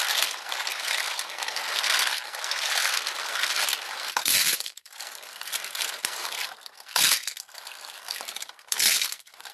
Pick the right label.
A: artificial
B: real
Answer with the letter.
A